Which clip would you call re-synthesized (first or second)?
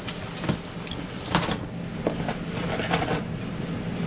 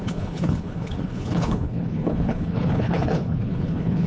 second